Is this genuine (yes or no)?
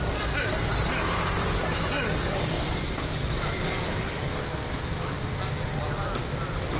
yes